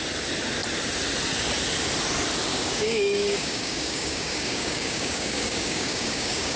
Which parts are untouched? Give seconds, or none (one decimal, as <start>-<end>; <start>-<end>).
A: 0.0-2.5